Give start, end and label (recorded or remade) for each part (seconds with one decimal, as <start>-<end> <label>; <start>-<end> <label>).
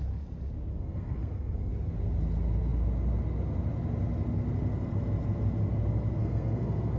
0.0-0.7 recorded; 0.7-1.7 remade; 1.7-6.2 recorded; 6.2-7.0 remade